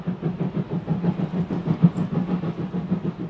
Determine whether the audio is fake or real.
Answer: real